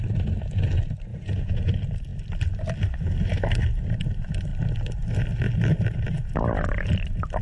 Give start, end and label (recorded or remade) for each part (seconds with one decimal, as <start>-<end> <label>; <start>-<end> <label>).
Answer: 0.0-1.1 recorded; 1.1-1.6 remade; 1.6-7.4 recorded